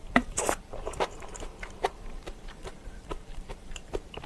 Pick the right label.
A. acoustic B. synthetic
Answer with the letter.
B